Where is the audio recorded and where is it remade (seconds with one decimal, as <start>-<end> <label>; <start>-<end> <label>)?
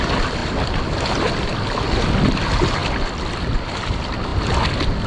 0.0-5.1 recorded